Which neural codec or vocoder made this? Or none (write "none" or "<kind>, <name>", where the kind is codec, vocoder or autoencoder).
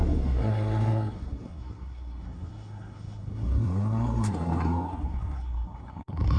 codec, SNAC